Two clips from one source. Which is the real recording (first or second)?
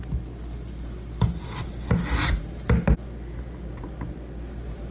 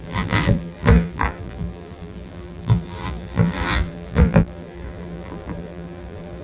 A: first